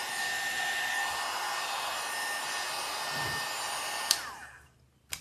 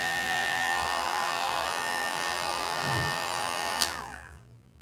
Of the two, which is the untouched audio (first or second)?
first